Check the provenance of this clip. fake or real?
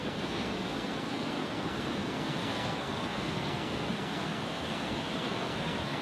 fake